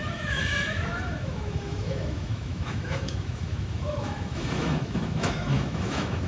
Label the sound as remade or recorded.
remade